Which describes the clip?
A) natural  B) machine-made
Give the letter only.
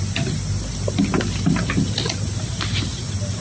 A